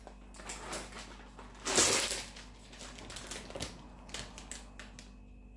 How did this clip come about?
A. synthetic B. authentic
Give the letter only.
B